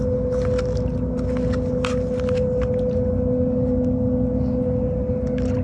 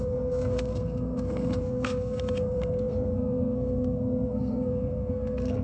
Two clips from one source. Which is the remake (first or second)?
second